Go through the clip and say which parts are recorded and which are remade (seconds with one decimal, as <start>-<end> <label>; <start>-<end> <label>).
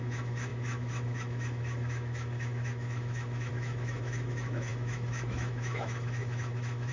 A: 0.0-6.9 remade